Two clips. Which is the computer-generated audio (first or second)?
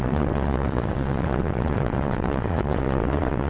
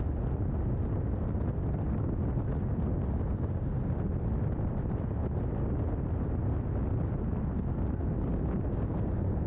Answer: first